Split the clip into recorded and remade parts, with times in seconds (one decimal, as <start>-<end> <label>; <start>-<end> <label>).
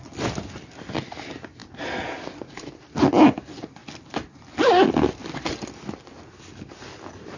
0.0-7.4 recorded